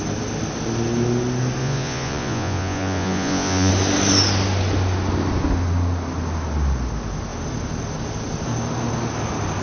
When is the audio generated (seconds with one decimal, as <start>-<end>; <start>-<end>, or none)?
1.6-3.7